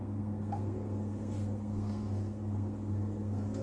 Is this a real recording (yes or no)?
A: no